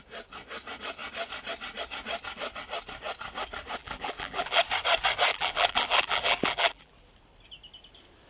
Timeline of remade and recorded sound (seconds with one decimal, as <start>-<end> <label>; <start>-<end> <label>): 0.0-3.8 recorded; 3.8-4.6 remade; 4.6-5.3 recorded; 5.3-6.9 remade; 6.9-8.3 recorded